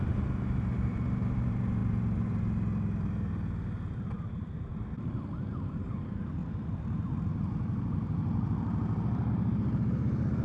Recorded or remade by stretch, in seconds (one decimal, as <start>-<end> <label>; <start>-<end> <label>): 0.0-4.7 remade; 4.7-5.7 recorded; 5.7-6.4 remade; 6.4-9.3 recorded; 9.3-10.4 remade